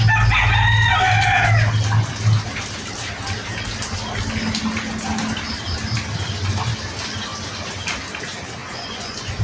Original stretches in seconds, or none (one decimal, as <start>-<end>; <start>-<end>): 0.0-8.6